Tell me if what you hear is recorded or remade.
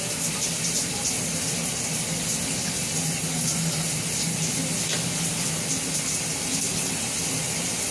recorded